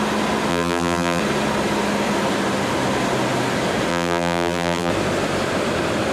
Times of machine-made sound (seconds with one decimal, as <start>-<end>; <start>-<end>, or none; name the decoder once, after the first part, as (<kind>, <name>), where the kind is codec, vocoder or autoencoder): 0.5-1.2 (vocoder, BigVGAN v2); 3.9-4.9